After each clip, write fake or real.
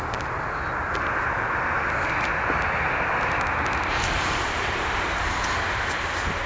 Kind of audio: real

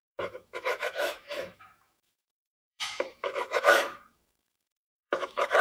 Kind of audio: fake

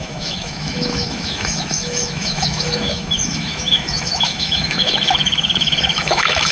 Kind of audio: fake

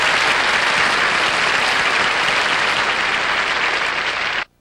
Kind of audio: real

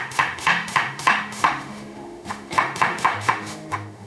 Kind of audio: fake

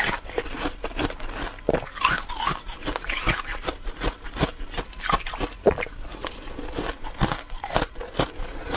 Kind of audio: real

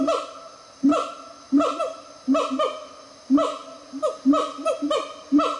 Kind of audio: real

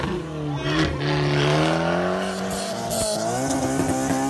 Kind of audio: real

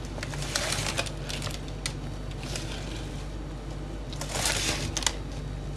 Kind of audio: real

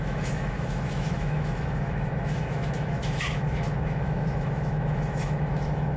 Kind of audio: fake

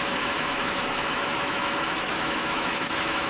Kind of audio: fake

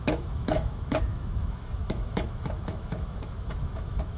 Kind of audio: fake